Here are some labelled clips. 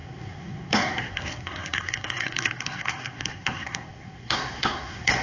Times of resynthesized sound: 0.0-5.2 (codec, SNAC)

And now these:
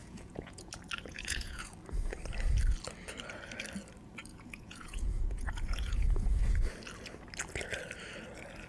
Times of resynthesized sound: 0.0-0.7 (vocoder, Vocos); 1.1-1.7; 4.3-6.4

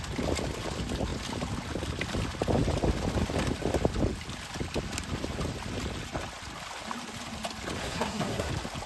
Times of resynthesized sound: 7.8-8.5 (codec, SNAC)

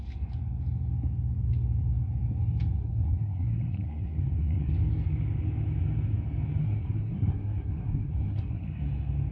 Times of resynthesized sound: 2.8-4.7 (codec, SNAC); 6.6-8.8

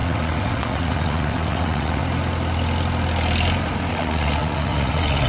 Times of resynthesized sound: 0.0-2.0 (vocoder, WaveNeXt); 3.9-5.3

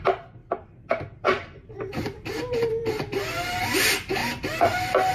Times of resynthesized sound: 0.4-2.9 (vocoder, BigVGAN v2)

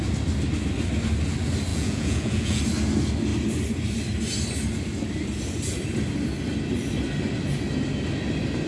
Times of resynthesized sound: 1.7-2.6 (vocoder, Vocos)

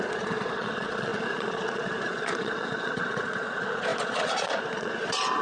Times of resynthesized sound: 0.0-5.4 (vocoder, Vocos)